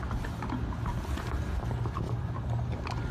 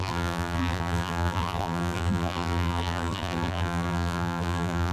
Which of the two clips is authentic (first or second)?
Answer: first